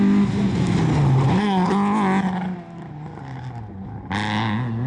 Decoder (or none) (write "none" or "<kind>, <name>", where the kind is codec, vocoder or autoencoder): none